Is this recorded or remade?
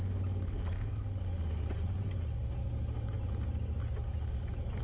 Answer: recorded